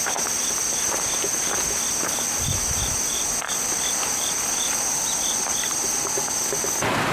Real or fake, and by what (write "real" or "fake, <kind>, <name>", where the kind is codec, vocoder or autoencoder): real